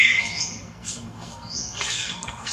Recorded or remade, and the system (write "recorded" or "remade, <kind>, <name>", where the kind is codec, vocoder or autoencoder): remade, codec, SNAC